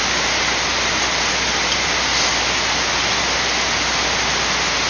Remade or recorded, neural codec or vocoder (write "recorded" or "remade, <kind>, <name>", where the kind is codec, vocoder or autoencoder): recorded